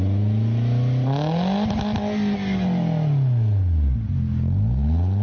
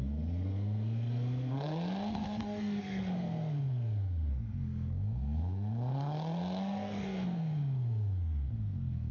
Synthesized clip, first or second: second